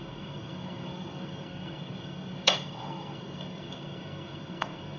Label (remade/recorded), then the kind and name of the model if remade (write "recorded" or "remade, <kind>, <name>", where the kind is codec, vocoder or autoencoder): remade, codec, SNAC